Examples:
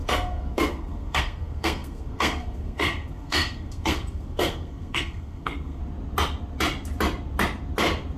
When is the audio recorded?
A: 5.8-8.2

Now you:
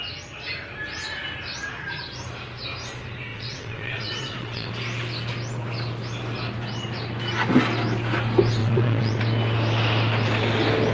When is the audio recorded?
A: 0.0-3.3; 4.7-8.6; 9.2-10.9

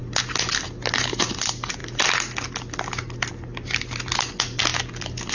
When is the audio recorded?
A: 0.0-5.3

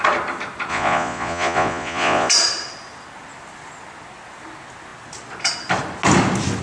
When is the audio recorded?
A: 0.0-0.7; 2.3-6.6